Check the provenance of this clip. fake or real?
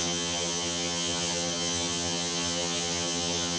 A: fake